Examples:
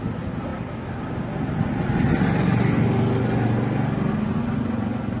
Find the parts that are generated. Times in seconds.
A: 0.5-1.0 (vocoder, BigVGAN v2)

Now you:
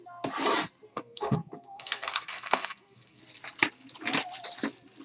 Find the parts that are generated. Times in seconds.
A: 0.9-3.2 (codec, SNAC)

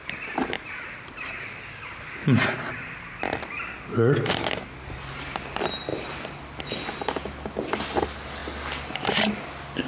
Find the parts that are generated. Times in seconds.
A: 5.9-6.7 (vocoder, BigVGAN v2)

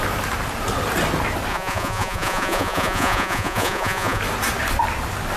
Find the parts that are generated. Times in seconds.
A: 1.5-4.2 (vocoder, Vocos)